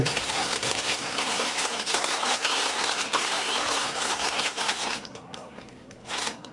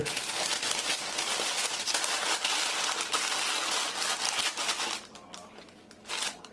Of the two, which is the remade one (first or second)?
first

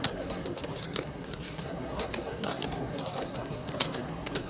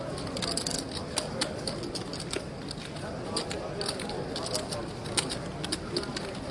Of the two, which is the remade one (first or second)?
first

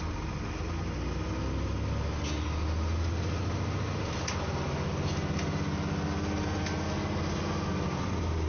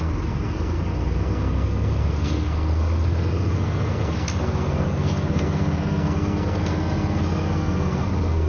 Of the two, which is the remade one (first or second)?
second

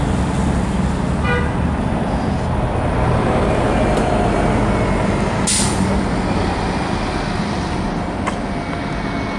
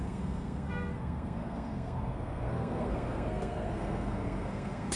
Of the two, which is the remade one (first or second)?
second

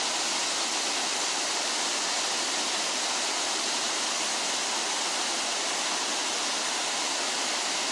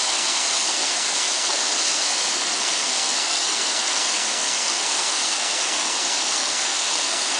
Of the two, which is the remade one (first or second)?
second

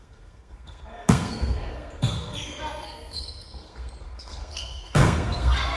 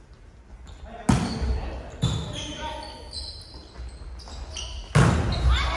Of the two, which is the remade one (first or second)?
first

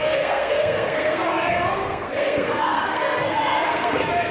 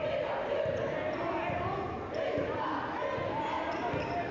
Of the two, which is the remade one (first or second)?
first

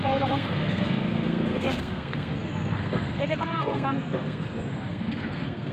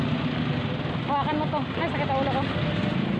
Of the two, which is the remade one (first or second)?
first